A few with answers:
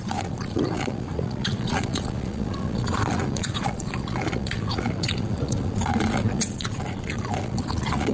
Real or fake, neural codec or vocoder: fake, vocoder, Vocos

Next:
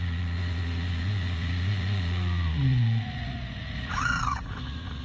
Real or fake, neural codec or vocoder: fake, vocoder, Vocos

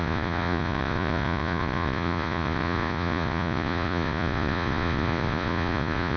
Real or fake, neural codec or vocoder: fake, vocoder, Vocos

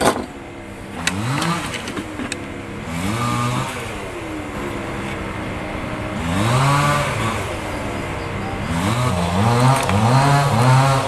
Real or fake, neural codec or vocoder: real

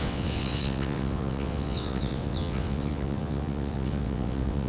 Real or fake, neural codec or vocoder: fake, vocoder, WaveNeXt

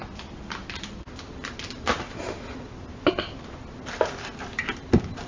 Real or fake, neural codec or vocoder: real